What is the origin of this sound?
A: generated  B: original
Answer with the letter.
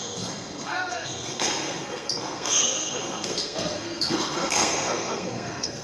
A